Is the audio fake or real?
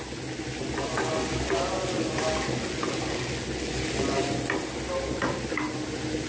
real